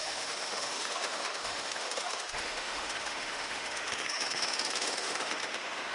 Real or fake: fake